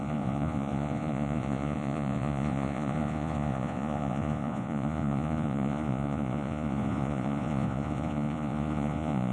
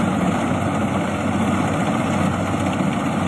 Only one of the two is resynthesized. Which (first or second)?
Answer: first